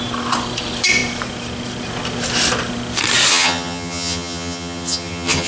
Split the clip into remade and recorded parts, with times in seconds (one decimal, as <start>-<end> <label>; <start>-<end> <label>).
0.0-3.3 recorded; 3.3-5.5 remade